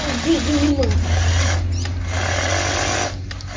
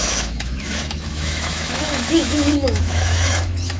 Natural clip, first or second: first